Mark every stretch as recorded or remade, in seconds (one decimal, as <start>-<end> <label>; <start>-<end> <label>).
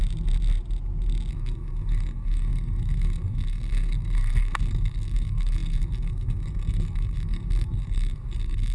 0.0-1.3 recorded; 1.3-8.7 remade